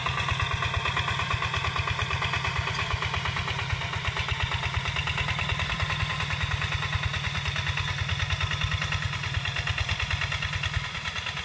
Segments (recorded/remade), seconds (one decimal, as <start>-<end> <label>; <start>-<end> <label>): 0.0-11.4 recorded